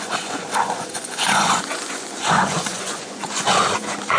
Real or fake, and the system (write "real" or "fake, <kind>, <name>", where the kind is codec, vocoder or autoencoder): fake, vocoder, Vocos